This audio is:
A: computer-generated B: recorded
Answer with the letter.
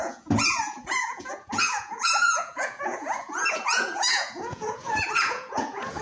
A